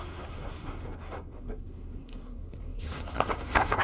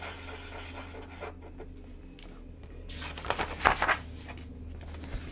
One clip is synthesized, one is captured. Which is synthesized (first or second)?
first